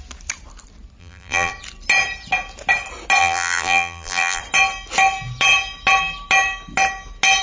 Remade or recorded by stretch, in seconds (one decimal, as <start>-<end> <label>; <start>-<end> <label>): 0.0-1.0 recorded; 1.0-1.5 remade; 1.5-3.2 recorded; 3.2-4.4 remade; 4.4-7.4 recorded